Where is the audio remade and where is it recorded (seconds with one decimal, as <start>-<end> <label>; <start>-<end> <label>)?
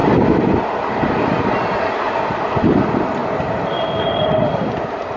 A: 0.0-5.2 recorded